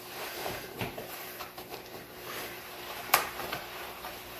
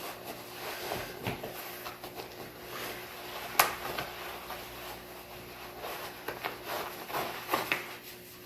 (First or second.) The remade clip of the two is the first